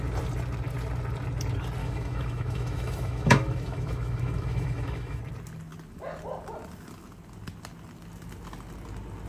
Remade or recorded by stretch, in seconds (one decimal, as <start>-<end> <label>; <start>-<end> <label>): 0.0-1.8 recorded; 1.8-5.2 remade; 5.2-9.3 recorded